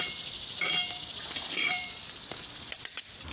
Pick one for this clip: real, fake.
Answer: fake